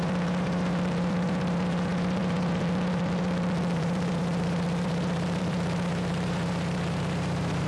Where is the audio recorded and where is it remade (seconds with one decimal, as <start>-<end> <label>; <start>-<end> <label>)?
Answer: 0.0-7.7 remade